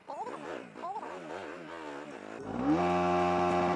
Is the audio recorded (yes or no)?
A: yes